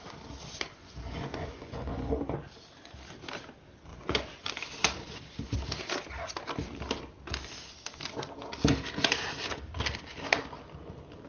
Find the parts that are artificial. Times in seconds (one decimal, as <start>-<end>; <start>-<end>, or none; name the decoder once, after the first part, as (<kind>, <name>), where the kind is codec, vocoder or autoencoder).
0.8-2.1 (vocoder, Vocos); 3.9-4.5